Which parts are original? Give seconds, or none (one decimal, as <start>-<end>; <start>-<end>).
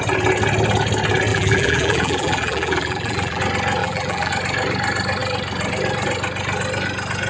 0.0-1.3; 3.4-3.8; 4.3-7.3